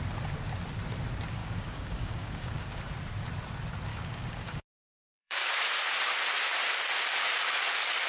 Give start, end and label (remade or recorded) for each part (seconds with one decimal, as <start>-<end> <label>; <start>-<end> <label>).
0.0-1.4 recorded; 1.4-2.8 remade; 2.8-3.9 recorded; 3.9-5.9 remade; 5.9-8.1 recorded